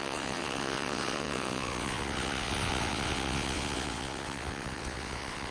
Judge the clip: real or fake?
fake